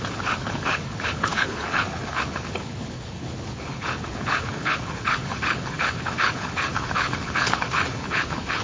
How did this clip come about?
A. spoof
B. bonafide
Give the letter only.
A